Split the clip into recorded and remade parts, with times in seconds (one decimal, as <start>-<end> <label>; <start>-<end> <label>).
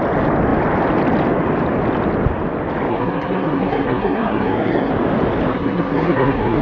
0.0-2.9 recorded; 2.9-4.9 remade; 4.9-5.5 recorded; 5.5-6.6 remade